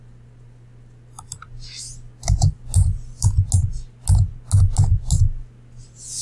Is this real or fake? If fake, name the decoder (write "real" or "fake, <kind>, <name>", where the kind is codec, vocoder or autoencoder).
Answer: real